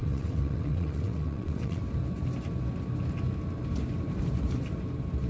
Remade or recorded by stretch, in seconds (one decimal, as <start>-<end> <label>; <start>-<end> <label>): 0.0-1.8 remade; 1.8-5.3 recorded